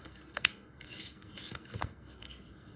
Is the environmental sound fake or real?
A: fake